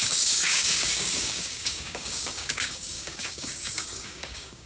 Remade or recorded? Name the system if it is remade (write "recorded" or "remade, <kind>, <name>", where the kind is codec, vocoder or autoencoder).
remade, codec, DAC